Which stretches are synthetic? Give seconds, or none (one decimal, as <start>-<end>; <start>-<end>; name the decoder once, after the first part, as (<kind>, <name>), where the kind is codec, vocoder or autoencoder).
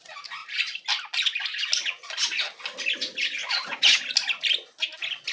3.4-4.0 (vocoder, Vocos)